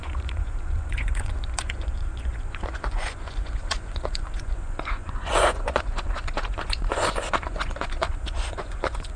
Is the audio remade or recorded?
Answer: remade